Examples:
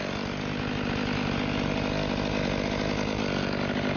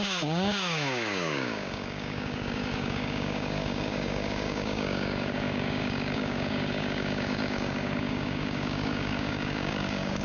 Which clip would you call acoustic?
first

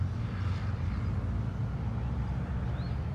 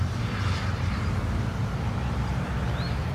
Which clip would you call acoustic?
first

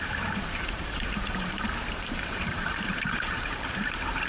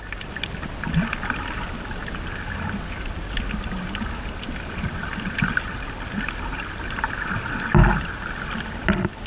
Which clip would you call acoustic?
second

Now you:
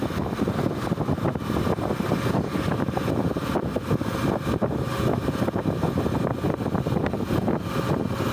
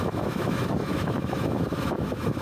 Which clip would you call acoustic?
first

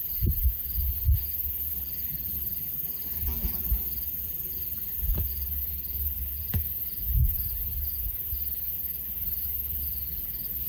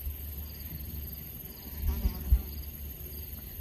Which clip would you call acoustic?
second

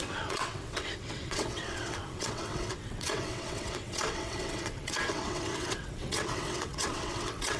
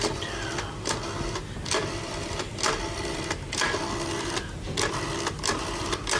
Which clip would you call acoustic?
second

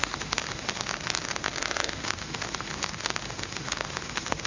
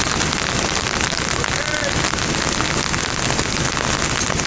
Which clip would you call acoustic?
second